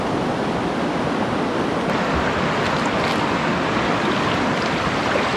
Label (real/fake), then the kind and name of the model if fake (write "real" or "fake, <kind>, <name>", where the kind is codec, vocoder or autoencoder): real